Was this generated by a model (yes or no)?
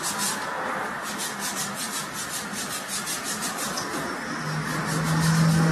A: no